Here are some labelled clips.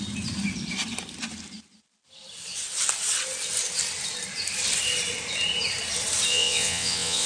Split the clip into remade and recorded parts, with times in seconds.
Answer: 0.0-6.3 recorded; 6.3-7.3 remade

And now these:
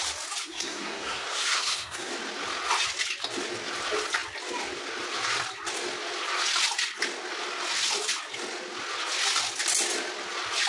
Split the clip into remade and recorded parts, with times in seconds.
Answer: 0.0-0.4 recorded; 0.4-2.1 remade; 2.1-10.7 recorded

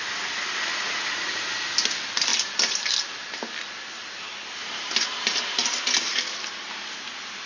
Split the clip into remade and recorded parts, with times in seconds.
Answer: 0.0-0.7 recorded; 0.7-1.5 remade; 1.5-7.5 recorded

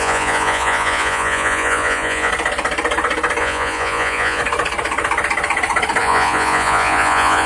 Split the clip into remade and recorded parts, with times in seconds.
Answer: 0.0-2.3 remade; 2.3-3.4 recorded; 3.4-4.4 remade; 4.4-6.0 recorded; 6.0-7.5 remade

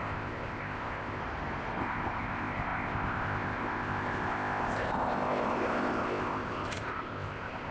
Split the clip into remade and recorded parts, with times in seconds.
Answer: 0.0-1.2 remade; 1.2-1.8 recorded; 1.8-7.7 remade

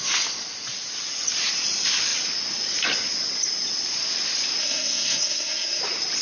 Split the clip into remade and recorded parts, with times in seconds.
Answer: 0.0-4.6 recorded; 4.6-5.8 remade; 5.8-6.2 recorded